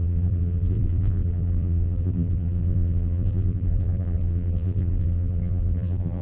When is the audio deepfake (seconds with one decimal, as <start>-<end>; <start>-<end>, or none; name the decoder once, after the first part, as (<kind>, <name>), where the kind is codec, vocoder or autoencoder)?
0.0-6.2 (vocoder, BigVGAN v2)